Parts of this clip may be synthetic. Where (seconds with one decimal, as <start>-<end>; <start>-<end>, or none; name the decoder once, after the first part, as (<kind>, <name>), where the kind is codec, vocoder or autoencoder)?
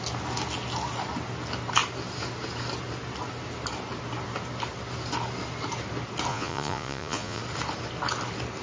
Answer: 6.3-7.4 (vocoder, Vocos)